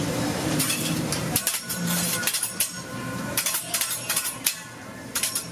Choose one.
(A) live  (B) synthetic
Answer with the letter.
B